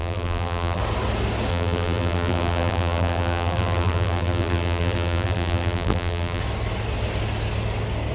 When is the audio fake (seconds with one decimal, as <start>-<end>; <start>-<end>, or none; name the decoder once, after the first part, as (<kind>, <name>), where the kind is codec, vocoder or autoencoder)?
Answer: 0.0-0.8 (vocoder, BigVGAN v2); 1.5-6.4